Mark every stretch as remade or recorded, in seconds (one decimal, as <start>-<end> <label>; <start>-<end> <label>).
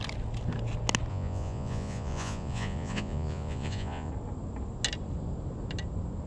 0.0-1.1 recorded; 1.1-4.1 remade; 4.1-6.3 recorded